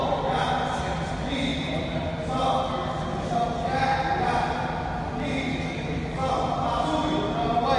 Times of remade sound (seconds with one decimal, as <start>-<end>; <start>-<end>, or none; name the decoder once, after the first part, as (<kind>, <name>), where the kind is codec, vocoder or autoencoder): 5.5-6.3 (codec, DAC)